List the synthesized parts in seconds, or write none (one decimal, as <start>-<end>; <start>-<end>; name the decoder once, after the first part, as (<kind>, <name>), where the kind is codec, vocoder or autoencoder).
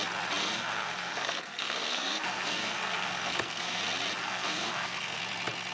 0.4-3.8 (codec, SNAC); 4.2-5.2